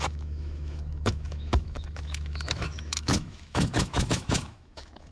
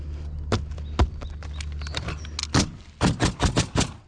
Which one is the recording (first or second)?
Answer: second